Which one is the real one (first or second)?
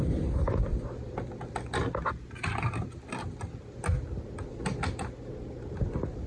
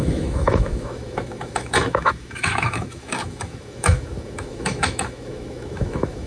first